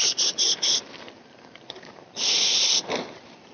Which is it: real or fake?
fake